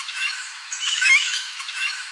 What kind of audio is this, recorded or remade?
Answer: remade